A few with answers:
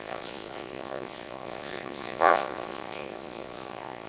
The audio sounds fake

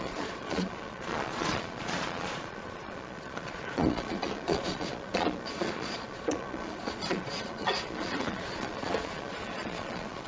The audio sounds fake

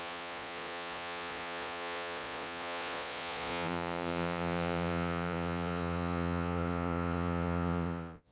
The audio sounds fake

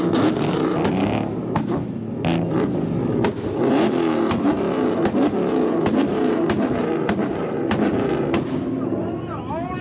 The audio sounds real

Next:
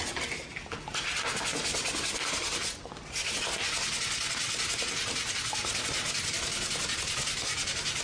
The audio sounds real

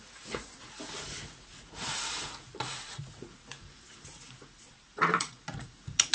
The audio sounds fake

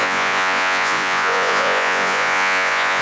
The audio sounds fake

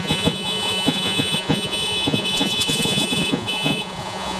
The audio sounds fake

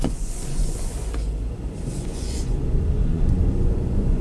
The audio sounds fake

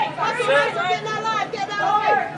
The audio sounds real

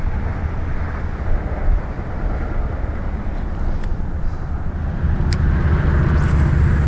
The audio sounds real